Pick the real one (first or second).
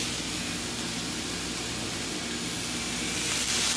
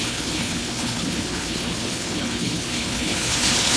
first